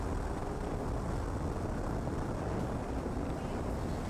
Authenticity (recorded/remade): recorded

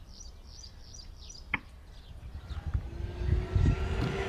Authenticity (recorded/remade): recorded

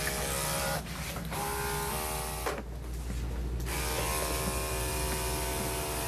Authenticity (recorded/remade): recorded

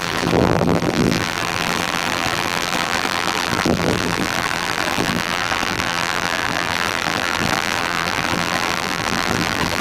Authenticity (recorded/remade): remade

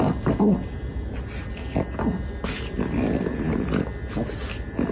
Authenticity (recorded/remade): recorded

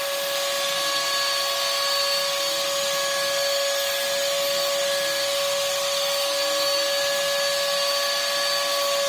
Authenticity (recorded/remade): recorded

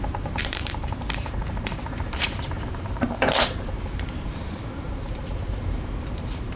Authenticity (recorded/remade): remade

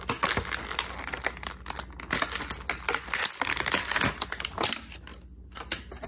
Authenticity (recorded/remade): recorded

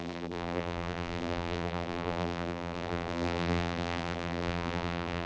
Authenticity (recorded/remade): remade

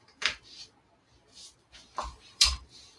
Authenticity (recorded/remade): remade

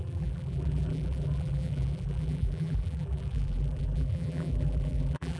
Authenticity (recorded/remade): remade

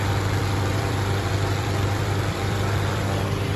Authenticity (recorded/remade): remade